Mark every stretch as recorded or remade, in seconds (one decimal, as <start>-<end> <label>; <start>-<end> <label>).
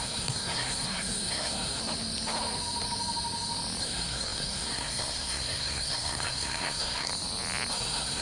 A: 0.0-1.8 remade; 1.8-3.8 recorded; 3.8-7.1 remade; 7.1-7.7 recorded; 7.7-8.2 remade